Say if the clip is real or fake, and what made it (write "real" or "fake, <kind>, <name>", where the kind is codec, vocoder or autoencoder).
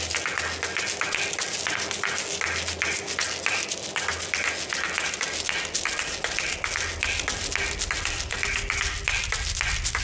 real